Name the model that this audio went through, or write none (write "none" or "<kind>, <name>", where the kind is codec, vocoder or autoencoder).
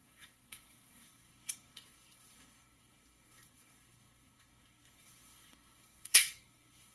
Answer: codec, SNAC